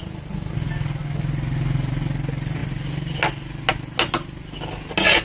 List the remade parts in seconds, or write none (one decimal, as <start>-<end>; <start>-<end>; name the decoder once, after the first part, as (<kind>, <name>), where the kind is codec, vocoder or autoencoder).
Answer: none